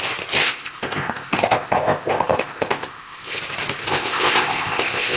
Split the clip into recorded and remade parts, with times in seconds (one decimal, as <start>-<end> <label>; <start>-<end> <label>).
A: 0.0-0.4 recorded; 0.4-3.4 remade; 3.4-3.8 recorded; 3.8-5.2 remade